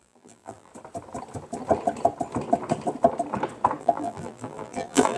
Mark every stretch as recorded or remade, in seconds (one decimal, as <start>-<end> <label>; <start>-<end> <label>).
0.0-0.7 remade; 0.7-3.8 recorded; 3.8-5.2 remade